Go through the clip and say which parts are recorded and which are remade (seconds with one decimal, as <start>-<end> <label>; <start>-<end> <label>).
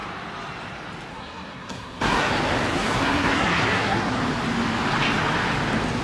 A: 0.0-1.1 recorded; 1.1-2.3 remade; 2.3-2.7 recorded; 2.7-4.2 remade; 4.2-6.0 recorded